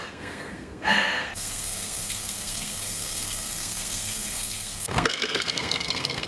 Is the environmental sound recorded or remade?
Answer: remade